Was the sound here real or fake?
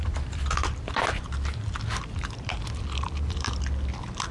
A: fake